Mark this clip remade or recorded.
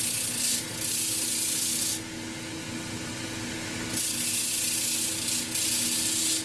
recorded